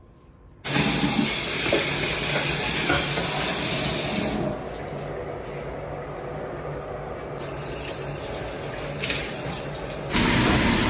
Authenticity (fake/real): real